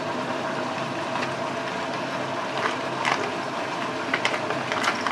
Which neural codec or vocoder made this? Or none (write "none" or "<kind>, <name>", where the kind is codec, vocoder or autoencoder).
none